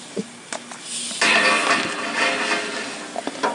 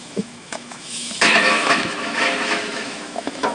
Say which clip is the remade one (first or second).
second